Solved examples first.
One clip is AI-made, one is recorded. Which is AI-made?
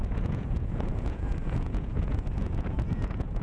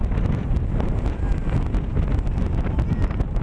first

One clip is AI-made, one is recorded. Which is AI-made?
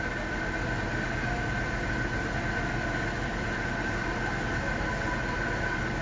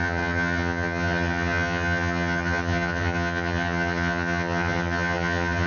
second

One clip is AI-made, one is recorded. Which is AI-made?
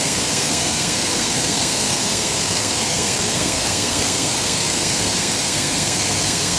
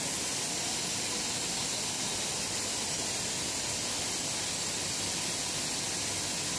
first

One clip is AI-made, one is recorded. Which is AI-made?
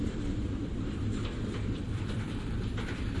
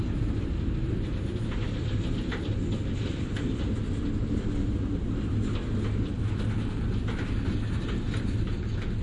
first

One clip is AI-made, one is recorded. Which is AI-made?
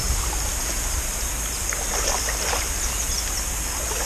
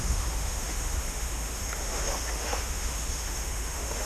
second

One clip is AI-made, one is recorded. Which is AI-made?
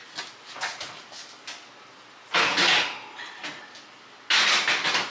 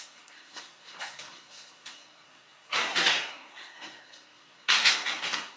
second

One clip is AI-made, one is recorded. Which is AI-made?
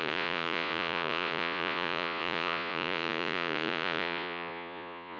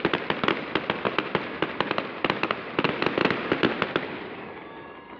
first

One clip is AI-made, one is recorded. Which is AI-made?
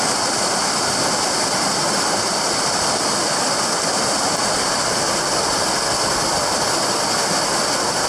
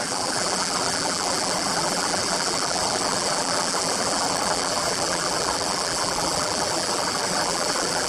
second